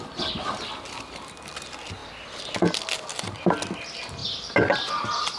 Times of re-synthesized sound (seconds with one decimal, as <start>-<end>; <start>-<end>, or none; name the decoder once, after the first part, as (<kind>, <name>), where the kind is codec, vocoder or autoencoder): none